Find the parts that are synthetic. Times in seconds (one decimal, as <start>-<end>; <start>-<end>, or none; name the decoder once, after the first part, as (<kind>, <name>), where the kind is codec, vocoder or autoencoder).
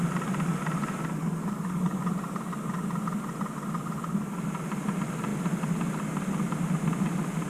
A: 1.2-2.0 (codec, DAC)